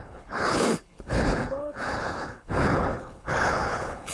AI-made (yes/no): yes